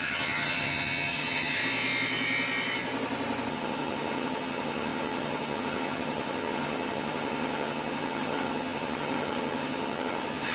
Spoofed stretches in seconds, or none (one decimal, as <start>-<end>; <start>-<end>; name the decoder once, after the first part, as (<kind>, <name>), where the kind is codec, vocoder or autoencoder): 0.0-1.6 (vocoder, HiFi-GAN); 3.5-10.5